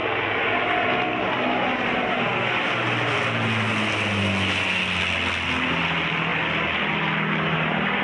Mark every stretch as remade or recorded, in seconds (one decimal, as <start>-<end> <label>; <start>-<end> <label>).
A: 0.0-8.0 recorded